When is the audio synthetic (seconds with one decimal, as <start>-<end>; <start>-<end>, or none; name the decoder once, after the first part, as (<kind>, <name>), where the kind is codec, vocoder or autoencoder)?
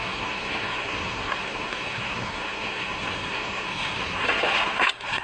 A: 0.0-5.2 (codec, SNAC)